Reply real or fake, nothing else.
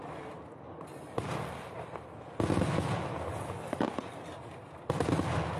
real